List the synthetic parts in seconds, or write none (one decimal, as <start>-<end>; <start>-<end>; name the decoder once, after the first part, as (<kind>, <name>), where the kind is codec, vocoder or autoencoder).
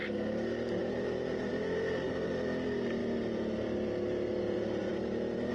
0.8-3.0 (vocoder, BigVGAN v2); 4.4-5.5